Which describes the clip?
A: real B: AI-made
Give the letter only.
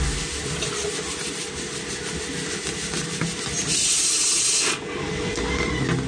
A